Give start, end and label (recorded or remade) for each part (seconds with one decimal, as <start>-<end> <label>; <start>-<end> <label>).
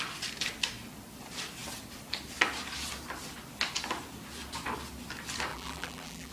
0.0-5.5 recorded; 5.5-6.3 remade